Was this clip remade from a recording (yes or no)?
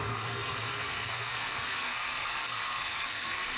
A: yes